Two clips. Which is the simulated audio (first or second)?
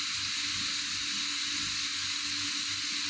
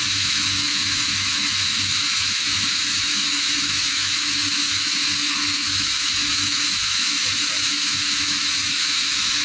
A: second